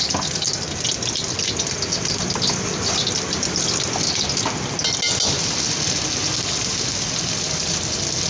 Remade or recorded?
recorded